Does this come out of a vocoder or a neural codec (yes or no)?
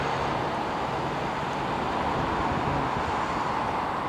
no